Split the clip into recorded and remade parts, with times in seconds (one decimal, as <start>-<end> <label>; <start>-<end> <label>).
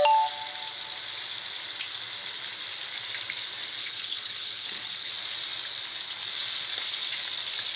0.0-3.8 recorded; 3.8-5.1 remade; 5.1-7.8 recorded